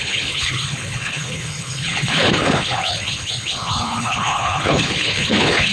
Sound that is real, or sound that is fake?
fake